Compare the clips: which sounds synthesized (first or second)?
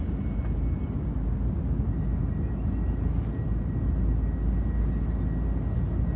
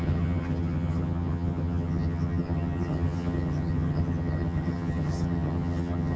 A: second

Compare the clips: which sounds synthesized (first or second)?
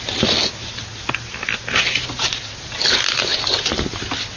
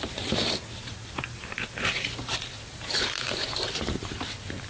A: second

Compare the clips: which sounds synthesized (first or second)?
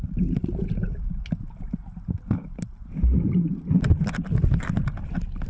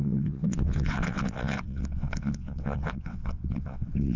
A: second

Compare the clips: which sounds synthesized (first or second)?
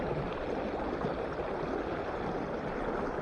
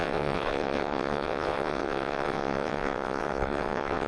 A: second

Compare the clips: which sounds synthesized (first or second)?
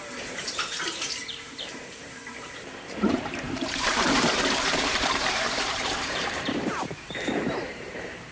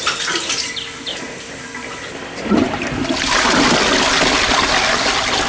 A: first